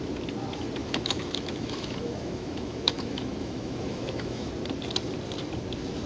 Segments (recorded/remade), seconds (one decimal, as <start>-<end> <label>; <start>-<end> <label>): 0.0-0.8 recorded; 0.8-4.5 remade; 4.5-6.1 recorded